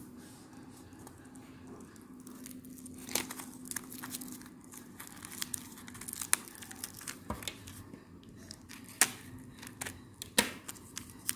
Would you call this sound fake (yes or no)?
no